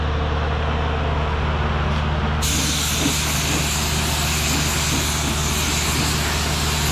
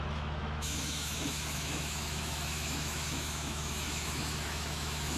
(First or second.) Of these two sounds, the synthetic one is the second